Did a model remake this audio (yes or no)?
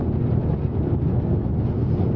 no